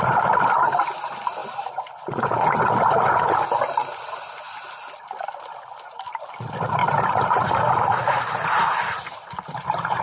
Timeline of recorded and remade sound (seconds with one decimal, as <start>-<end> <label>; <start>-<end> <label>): 0.0-6.8 recorded; 6.8-8.6 remade; 8.6-10.0 recorded